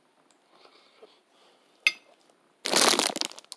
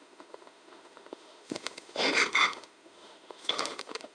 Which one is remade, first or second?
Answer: second